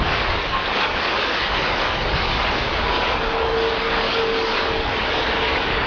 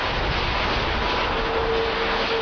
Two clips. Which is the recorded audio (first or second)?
second